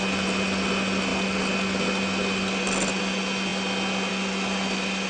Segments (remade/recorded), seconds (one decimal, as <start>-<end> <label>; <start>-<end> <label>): 0.0-5.1 recorded